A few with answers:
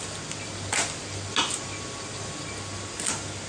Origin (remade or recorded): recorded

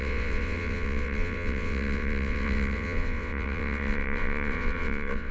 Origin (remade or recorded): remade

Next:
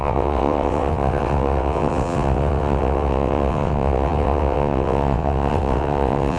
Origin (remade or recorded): remade